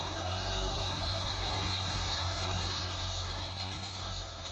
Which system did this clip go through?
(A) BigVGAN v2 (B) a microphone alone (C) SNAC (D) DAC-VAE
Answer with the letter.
C